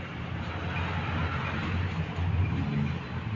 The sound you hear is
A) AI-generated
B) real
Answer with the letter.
B